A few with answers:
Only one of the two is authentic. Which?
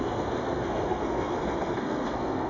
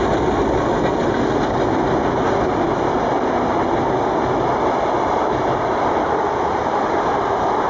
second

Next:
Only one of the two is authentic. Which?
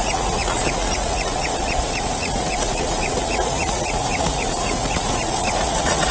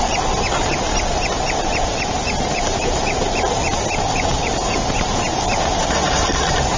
second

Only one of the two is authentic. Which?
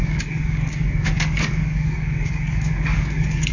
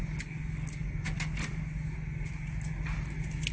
second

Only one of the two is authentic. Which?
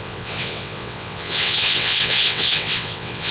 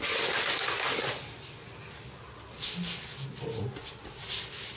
second